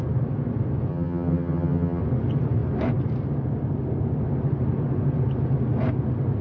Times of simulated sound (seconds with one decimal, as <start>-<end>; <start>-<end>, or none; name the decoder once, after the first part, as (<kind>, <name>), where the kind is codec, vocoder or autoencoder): 0.9-2.0 (vocoder, HiFi-GAN)